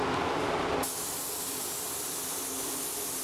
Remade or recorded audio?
recorded